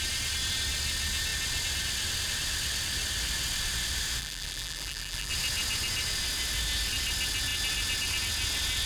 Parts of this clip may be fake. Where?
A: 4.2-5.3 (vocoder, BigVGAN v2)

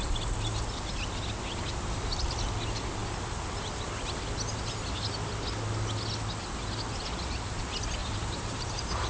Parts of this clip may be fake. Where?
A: 8.0-9.1 (vocoder, BigVGAN v2)